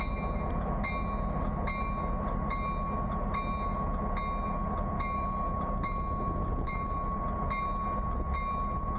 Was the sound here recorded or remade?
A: recorded